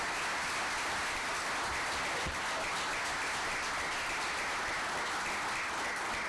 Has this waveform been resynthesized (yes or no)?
no